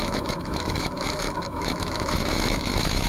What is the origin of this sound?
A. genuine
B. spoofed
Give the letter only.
B